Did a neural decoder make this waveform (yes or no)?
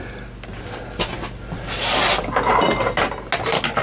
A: no